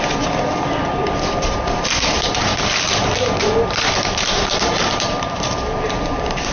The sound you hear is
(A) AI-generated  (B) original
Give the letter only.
A